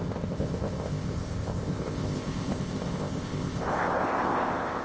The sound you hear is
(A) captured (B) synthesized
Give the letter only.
B